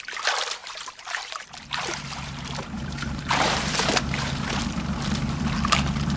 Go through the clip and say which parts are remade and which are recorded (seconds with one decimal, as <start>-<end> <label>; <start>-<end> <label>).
0.0-0.6 recorded; 0.6-4.3 remade; 4.3-6.2 recorded